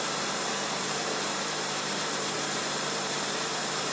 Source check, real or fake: fake